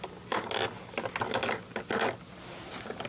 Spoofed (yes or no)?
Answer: no